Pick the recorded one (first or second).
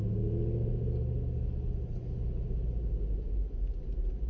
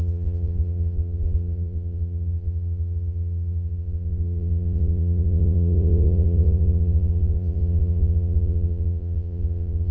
first